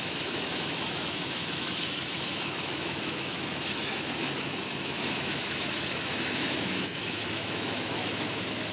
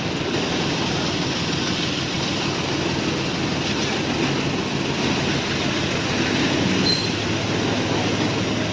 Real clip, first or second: second